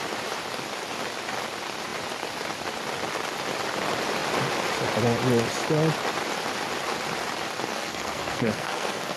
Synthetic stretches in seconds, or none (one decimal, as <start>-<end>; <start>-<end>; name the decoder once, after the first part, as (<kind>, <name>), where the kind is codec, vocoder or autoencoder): 7.7-9.2 (codec, SNAC)